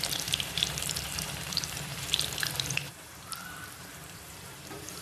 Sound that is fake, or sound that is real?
fake